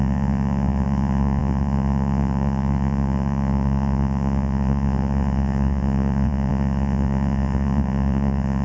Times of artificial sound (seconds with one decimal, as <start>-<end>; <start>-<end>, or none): 0.0-8.6